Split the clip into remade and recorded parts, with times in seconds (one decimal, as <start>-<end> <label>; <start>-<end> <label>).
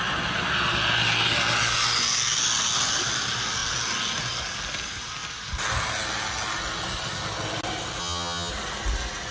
0.0-8.0 recorded; 8.0-8.5 remade; 8.5-9.3 recorded